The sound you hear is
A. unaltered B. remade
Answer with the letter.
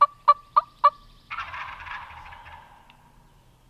A